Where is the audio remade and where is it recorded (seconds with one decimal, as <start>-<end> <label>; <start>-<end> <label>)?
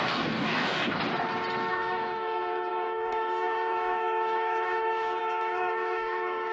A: 0.0-1.0 remade; 1.0-1.7 recorded; 1.7-6.5 remade